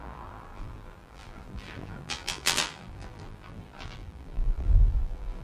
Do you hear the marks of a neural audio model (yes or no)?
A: yes